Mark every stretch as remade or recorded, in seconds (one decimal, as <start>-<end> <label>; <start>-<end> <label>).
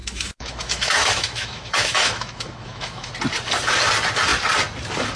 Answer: 0.0-3.1 remade; 3.1-5.2 recorded